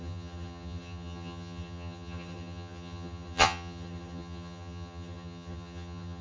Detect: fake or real fake